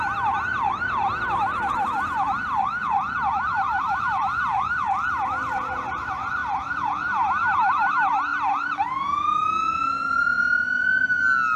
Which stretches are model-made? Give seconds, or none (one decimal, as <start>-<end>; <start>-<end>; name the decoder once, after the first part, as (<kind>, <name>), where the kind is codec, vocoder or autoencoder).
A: 6.4-6.9 (vocoder, BigVGAN v2)